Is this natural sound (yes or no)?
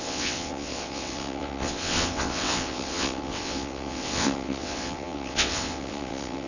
no